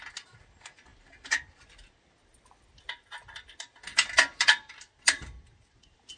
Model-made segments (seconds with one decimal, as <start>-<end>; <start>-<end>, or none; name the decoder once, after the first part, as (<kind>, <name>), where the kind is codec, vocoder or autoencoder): none